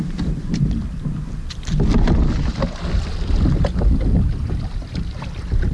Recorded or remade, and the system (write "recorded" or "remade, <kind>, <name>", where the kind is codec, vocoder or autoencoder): recorded